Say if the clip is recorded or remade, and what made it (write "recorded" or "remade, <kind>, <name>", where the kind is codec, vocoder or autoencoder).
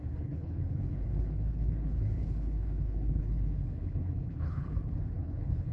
remade, codec, HILCodec